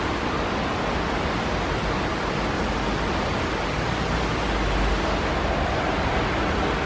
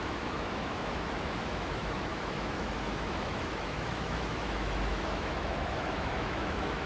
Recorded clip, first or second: first